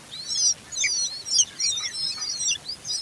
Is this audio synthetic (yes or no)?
no